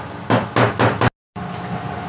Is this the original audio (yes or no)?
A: yes